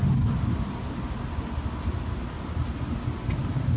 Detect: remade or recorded recorded